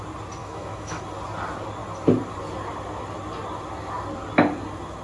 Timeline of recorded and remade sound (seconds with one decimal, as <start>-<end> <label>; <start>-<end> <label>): 0.0-0.4 recorded; 0.4-1.0 remade; 1.0-5.0 recorded